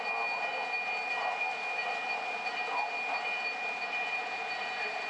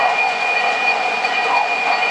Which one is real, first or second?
first